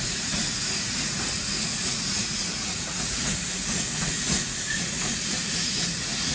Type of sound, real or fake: fake